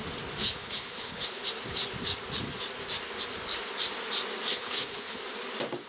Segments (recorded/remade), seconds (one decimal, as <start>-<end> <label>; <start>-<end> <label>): 0.0-0.4 recorded; 0.4-1.4 remade; 1.4-4.5 recorded; 4.5-5.2 remade; 5.2-5.9 recorded

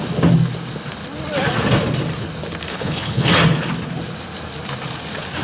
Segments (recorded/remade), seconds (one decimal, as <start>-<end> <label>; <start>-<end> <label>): 0.0-2.7 recorded; 2.7-3.3 remade; 3.3-5.4 recorded

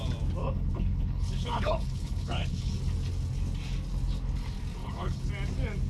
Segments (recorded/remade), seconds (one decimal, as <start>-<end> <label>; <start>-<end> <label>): 0.0-0.4 recorded; 0.4-2.7 remade; 2.7-4.8 recorded; 4.8-5.3 remade; 5.3-5.9 recorded

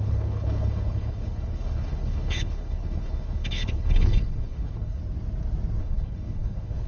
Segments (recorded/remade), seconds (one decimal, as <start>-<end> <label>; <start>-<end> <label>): 0.0-5.0 remade; 5.0-5.8 recorded; 5.8-6.9 remade

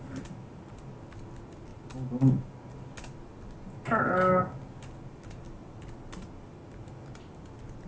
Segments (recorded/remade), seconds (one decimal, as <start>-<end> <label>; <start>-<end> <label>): 0.0-7.9 recorded

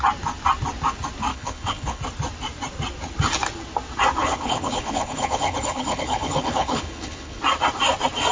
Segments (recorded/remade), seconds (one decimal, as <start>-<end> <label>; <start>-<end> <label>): 0.0-1.3 recorded; 1.3-2.0 remade; 2.0-4.2 recorded; 4.2-7.4 remade; 7.4-8.3 recorded